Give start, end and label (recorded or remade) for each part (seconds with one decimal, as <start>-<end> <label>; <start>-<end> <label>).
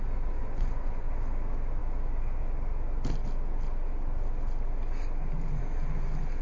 0.0-0.4 recorded; 0.4-1.1 remade; 1.1-6.4 recorded